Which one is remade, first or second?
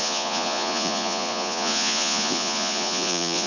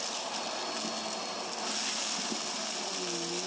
first